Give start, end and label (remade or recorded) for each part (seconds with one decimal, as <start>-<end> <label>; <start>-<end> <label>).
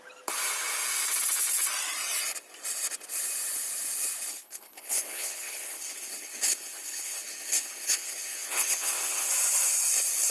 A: 0.0-4.3 recorded; 4.3-9.3 remade; 9.3-10.3 recorded